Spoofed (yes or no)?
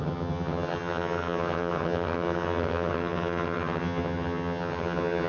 yes